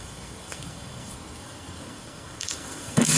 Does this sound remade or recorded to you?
remade